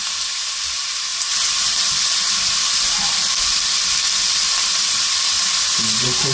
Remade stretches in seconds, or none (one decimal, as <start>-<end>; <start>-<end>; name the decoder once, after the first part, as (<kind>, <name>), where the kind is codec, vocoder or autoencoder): 1.1-4.9 (vocoder, BigVGAN v2)